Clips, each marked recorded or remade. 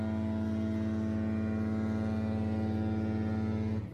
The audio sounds recorded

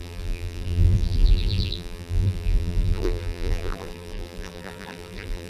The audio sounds remade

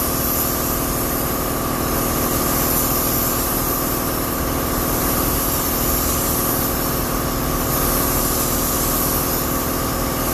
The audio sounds recorded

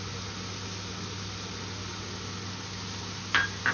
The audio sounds recorded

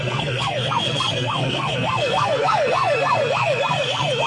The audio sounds remade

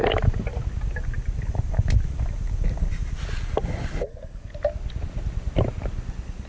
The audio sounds recorded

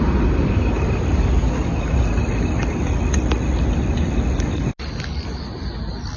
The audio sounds recorded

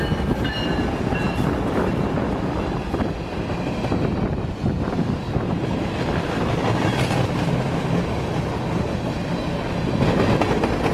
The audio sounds recorded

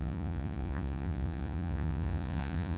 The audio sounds remade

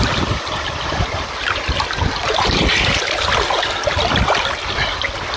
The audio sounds recorded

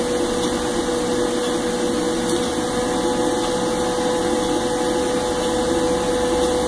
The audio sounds recorded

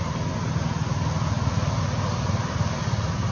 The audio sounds recorded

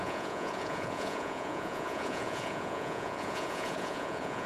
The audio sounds remade